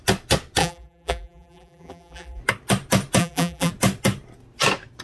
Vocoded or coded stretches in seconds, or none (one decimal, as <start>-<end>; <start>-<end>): 0.6-2.4; 3.2-3.7